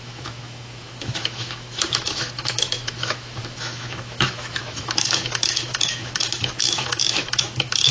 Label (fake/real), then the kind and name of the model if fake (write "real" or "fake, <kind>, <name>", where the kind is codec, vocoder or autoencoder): fake, autoencoder, DAC-VAE